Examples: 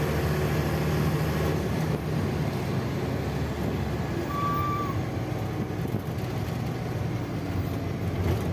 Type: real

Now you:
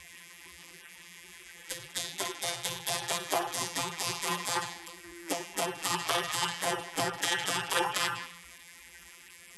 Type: fake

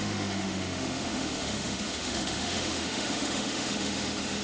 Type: fake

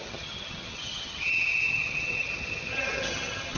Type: fake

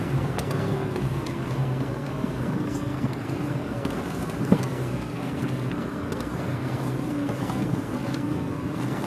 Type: fake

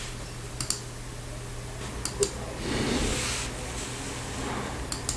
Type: real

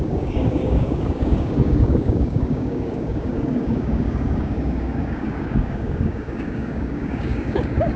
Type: fake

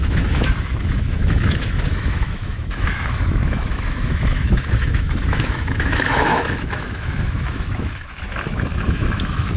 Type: fake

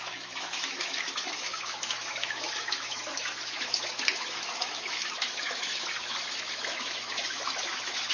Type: fake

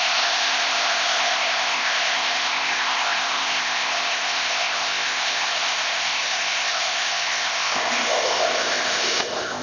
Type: fake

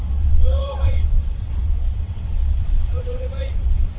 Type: fake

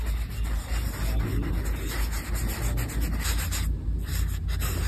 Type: real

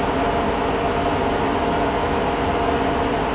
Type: real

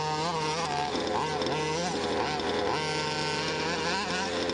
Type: real